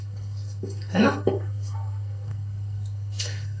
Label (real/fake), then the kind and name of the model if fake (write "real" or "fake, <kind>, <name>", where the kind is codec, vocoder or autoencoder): fake, codec, SNAC